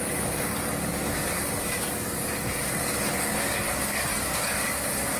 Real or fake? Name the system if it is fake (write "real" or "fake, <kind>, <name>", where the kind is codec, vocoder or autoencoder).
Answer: fake, codec, DAC